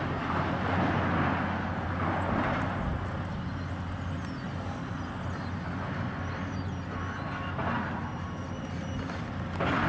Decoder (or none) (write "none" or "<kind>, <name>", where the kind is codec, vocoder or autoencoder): none